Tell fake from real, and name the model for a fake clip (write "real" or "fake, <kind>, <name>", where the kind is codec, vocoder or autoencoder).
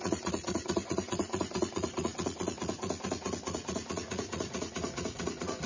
fake, vocoder, Vocos